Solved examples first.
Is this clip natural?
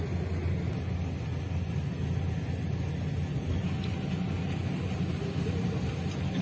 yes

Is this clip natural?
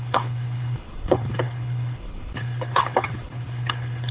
no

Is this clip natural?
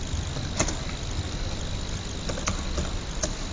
yes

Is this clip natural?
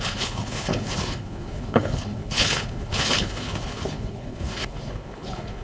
no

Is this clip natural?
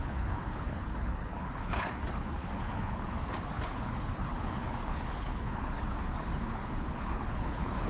no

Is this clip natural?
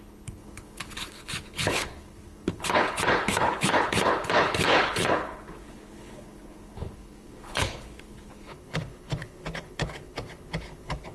no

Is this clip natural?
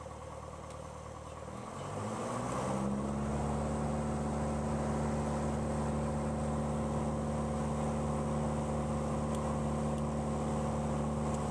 yes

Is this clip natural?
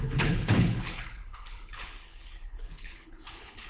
no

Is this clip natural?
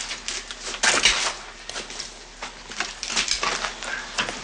yes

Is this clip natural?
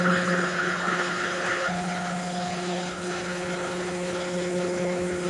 no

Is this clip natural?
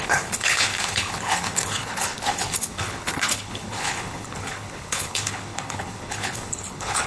no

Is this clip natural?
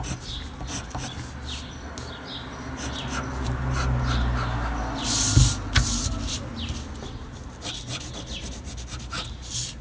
yes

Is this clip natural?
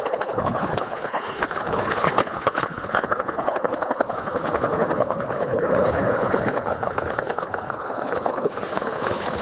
no